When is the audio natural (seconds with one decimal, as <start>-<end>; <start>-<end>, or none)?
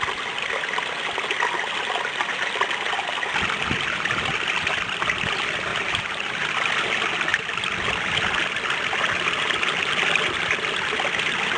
0.0-5.7; 6.5-11.6